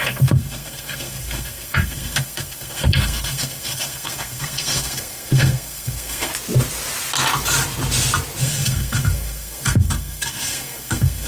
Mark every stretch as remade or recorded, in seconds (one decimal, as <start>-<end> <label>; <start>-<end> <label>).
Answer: 0.0-6.3 remade; 6.3-8.4 recorded; 8.4-11.3 remade

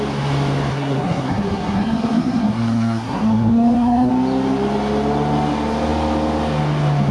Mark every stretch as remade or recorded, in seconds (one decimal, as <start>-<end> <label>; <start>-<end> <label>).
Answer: 0.0-0.7 recorded; 0.7-4.1 remade; 4.1-7.1 recorded

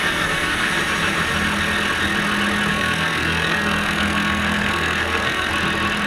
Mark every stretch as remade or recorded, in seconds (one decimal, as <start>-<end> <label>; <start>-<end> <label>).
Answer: 0.0-0.7 remade; 0.7-2.7 recorded; 2.7-5.5 remade; 5.5-6.1 recorded

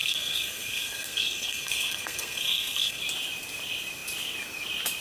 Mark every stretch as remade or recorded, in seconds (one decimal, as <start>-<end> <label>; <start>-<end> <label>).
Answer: 0.0-3.0 remade; 3.0-5.0 recorded

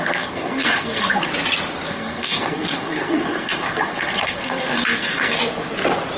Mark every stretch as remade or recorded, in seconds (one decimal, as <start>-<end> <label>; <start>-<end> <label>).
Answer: 0.0-1.3 remade; 1.3-1.9 recorded; 1.9-5.4 remade; 5.4-6.2 recorded

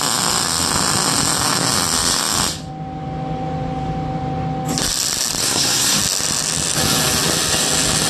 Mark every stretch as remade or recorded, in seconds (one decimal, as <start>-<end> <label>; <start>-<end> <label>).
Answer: 0.0-5.4 recorded; 5.4-6.0 remade; 6.0-8.1 recorded